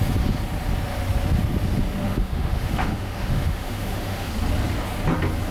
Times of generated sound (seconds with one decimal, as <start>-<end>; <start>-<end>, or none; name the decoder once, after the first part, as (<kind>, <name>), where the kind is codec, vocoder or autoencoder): 2.0-4.3 (autoencoder, DAC-VAE)